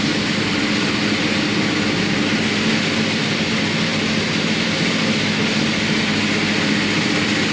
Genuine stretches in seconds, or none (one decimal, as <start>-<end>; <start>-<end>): 0.0-7.5